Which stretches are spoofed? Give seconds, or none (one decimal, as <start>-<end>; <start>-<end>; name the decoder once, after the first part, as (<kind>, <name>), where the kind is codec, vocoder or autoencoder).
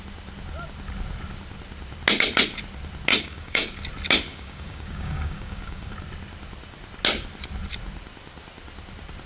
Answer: 3.1-3.8 (codec, DAC); 4.3-5.9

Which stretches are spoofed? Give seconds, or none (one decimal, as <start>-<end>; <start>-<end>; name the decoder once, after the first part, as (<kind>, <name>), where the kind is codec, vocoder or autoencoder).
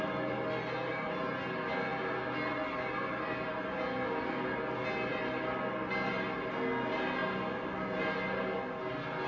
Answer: none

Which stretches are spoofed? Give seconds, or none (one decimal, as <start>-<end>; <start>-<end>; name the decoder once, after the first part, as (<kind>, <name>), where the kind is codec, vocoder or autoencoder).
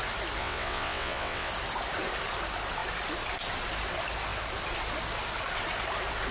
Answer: 0.4-1.5 (vocoder, WaveNeXt)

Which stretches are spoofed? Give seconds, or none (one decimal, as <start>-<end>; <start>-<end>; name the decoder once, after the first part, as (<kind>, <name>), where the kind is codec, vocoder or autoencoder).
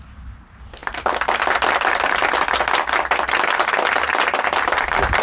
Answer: none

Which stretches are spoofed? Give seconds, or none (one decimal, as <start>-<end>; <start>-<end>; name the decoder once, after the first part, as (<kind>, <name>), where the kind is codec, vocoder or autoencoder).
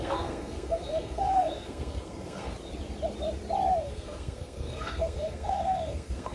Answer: 0.0-2.5 (codec, SNAC); 3.8-6.3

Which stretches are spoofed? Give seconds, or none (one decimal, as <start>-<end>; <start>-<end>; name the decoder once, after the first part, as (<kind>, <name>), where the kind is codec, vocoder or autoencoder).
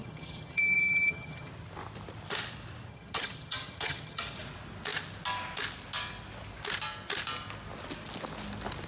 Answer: 0.0-1.5 (vocoder, HiFi-GAN); 2.9-4.2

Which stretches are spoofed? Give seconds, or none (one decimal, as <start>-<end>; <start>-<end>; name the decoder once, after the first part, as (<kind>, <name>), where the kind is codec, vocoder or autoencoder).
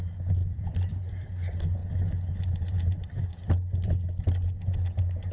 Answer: 0.4-1.3 (vocoder, BigVGAN v2)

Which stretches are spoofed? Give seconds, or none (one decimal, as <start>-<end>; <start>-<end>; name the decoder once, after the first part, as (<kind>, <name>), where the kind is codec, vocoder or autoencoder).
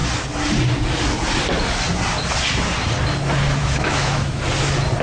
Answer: 3.6-4.4 (autoencoder, DAC-VAE)